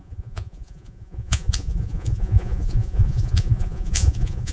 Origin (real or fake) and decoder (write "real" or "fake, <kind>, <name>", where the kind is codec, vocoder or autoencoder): fake, vocoder, Vocos